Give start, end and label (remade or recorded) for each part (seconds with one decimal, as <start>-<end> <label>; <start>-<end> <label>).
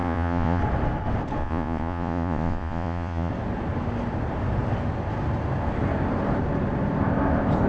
0.0-0.6 remade; 0.6-1.4 recorded; 1.4-3.3 remade; 3.3-7.7 recorded